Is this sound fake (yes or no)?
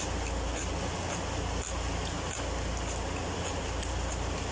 no